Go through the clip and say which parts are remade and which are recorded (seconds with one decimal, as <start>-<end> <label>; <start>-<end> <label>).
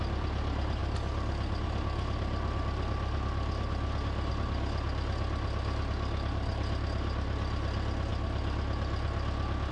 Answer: 0.0-9.7 recorded